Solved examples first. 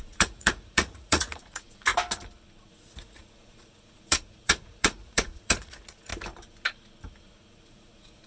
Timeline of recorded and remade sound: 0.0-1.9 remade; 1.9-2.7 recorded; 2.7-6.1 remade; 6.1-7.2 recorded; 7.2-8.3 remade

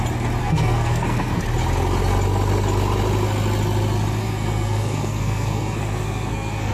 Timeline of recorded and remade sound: 0.0-0.4 recorded; 0.4-1.4 remade; 1.4-4.2 recorded; 4.2-6.7 remade

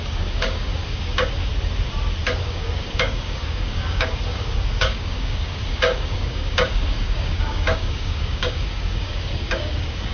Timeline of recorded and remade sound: 0.0-1.5 remade; 1.5-2.4 recorded; 2.4-10.1 remade

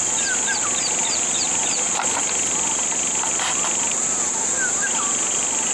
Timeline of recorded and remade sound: 0.0-5.7 recorded

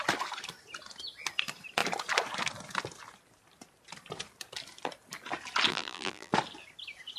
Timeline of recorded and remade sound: 0.0-5.7 recorded; 5.7-6.3 remade; 6.3-7.2 recorded